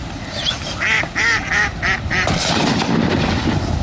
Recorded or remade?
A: recorded